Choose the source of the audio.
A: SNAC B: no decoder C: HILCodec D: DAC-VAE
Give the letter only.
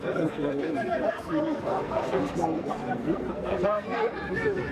A